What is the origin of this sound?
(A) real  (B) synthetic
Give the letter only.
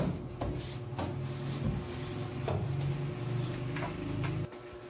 A